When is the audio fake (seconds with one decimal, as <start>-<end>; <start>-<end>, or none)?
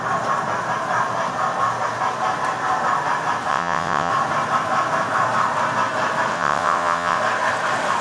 3.5-4.1; 6.3-7.2